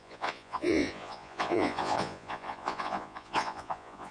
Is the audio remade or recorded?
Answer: remade